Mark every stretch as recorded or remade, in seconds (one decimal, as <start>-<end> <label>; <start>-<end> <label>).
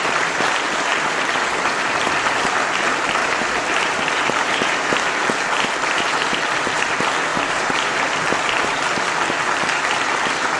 0.0-3.2 recorded; 3.2-4.9 remade; 4.9-7.3 recorded; 7.3-8.0 remade; 8.0-10.6 recorded